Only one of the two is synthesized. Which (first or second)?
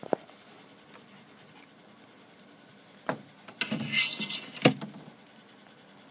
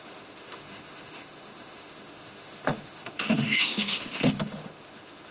second